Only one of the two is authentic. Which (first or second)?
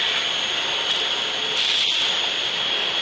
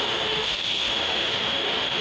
first